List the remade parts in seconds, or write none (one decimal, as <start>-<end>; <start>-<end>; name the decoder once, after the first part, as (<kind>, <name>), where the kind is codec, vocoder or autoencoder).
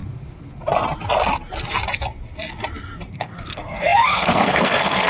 3.1-5.1 (codec, SNAC)